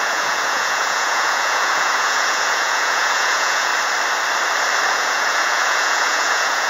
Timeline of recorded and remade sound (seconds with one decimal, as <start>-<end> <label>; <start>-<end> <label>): 0.0-3.7 remade; 3.7-4.9 recorded; 4.9-6.7 remade